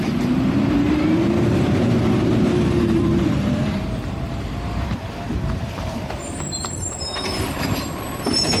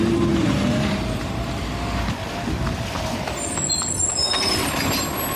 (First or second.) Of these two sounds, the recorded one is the second